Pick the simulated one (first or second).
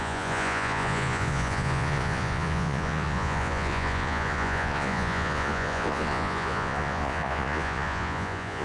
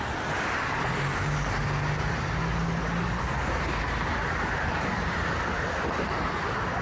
first